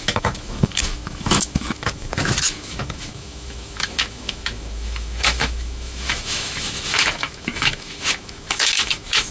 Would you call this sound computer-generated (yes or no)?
yes